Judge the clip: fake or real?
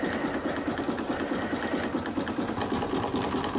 real